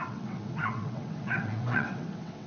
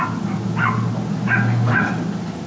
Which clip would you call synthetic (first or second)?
first